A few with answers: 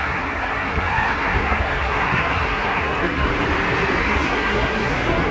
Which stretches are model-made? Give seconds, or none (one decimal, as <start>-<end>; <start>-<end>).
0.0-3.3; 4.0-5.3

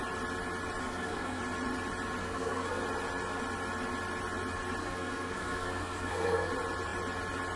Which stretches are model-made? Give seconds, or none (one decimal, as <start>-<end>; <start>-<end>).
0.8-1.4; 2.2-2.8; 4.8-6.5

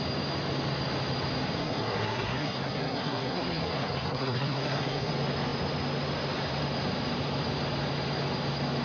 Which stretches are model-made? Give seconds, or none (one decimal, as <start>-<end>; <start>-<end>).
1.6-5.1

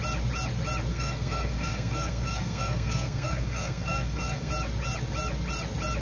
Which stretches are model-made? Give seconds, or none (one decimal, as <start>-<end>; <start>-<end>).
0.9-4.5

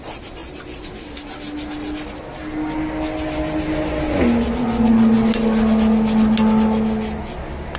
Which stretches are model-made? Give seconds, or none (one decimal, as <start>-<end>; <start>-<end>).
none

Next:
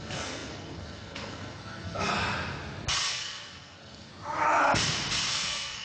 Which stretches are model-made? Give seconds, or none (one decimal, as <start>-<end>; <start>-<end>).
0.0-2.1; 3.1-4.1; 5.3-5.8